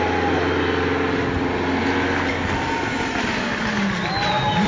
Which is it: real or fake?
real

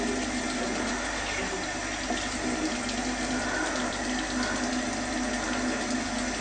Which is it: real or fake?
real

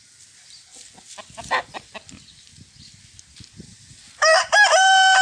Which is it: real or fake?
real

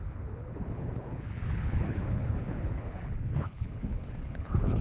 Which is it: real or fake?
fake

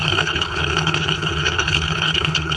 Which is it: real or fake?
fake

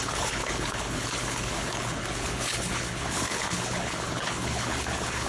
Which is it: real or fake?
fake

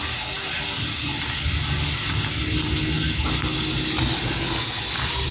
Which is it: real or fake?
real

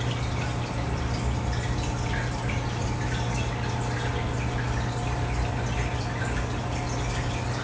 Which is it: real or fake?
real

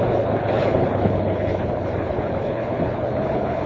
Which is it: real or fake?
fake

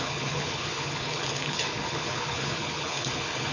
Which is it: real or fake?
fake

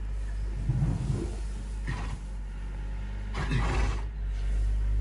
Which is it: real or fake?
real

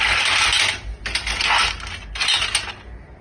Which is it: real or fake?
real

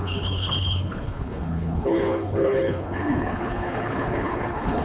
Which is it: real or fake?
fake